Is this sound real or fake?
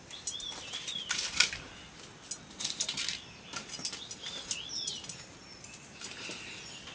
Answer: real